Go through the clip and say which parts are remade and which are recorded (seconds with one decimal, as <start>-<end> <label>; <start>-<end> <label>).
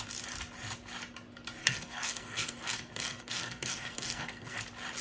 0.0-1.6 recorded; 1.6-4.6 remade; 4.6-5.0 recorded